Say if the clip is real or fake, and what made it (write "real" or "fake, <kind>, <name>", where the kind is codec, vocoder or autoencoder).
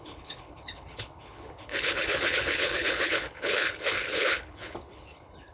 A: fake, codec, HILCodec